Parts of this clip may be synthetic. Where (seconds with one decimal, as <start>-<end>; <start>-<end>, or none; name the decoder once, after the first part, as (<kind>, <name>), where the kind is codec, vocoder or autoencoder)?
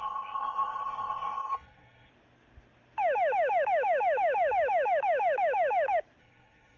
0.0-2.1 (codec, SNAC); 6.2-6.8